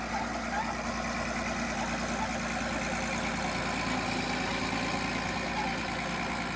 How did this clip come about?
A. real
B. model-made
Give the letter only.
A